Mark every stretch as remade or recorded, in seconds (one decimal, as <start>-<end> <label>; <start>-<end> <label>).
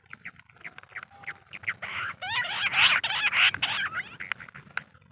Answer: 0.0-1.9 recorded; 1.9-2.5 remade; 2.5-5.1 recorded